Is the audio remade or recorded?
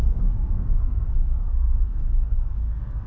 remade